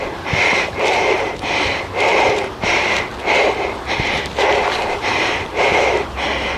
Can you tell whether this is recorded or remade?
remade